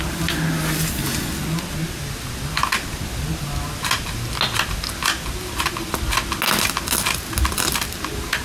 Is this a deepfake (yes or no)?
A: no